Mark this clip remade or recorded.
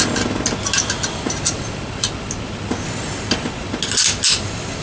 recorded